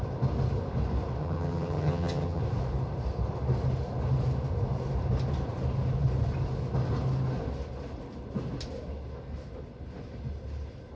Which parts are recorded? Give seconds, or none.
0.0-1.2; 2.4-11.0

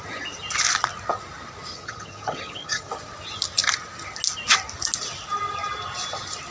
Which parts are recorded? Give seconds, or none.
0.0-1.7; 2.9-6.5